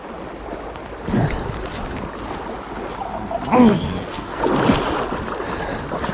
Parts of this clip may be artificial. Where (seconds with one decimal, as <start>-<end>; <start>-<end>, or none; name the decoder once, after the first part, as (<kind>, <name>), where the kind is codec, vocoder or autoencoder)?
3.7-4.4 (codec, SNAC)